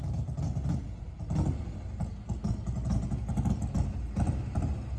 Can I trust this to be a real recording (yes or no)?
yes